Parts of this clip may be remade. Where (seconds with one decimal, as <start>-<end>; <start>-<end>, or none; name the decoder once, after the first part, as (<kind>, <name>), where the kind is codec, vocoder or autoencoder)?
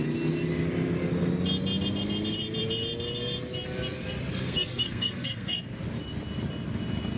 4.3-5.6 (codec, SNAC)